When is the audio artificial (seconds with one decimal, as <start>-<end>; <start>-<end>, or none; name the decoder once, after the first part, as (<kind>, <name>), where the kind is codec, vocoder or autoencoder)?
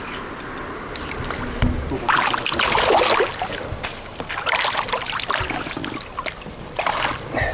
none